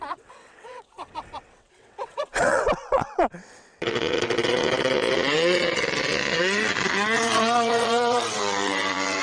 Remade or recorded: remade